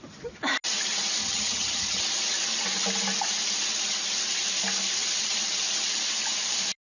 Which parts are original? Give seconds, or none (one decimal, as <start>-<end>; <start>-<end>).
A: 0.0-1.2; 2.0-6.9